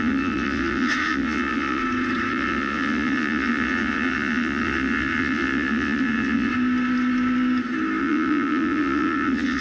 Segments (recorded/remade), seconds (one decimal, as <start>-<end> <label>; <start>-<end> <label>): 0.0-1.8 remade; 1.8-2.3 recorded; 2.3-6.5 remade; 6.5-8.0 recorded; 8.0-9.6 remade